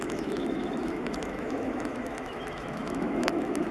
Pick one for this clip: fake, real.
fake